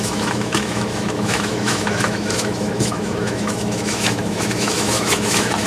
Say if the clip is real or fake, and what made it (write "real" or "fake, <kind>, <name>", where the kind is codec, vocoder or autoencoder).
fake, autoencoder, DAC-VAE